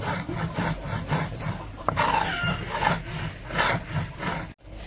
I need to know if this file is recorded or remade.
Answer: recorded